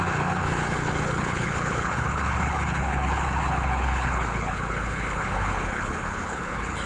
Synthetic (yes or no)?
yes